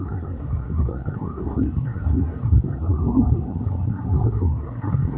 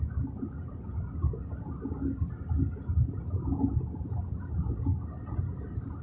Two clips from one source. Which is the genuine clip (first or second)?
second